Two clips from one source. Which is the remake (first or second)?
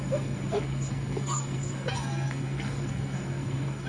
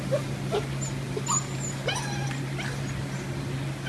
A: first